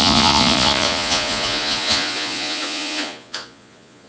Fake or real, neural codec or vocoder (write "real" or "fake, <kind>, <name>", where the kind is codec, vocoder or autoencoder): fake, vocoder, Vocos